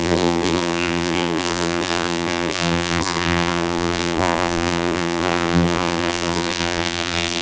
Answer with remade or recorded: remade